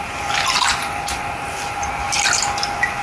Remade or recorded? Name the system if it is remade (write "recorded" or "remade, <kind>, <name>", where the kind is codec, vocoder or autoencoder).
recorded